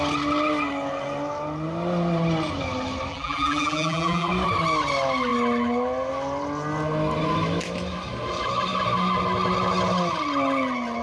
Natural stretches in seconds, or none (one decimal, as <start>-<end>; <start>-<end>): 0.0-3.1; 4.3-11.0